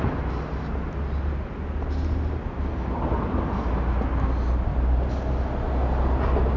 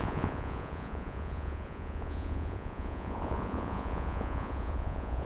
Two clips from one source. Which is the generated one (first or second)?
second